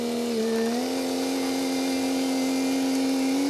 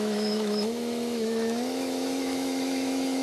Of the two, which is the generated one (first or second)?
second